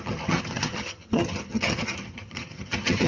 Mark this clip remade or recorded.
remade